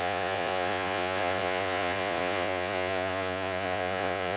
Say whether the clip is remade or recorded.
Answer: remade